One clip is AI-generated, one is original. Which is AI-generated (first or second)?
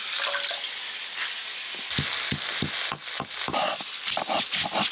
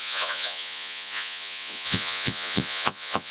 second